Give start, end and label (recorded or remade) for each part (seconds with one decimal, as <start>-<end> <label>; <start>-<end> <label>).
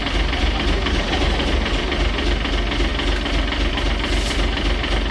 0.0-0.4 recorded; 0.4-1.9 remade; 1.9-5.1 recorded